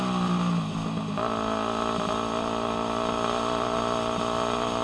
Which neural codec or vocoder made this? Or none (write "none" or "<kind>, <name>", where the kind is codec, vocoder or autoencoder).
none